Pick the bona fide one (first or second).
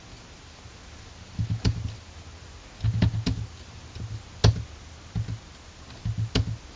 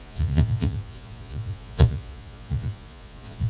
first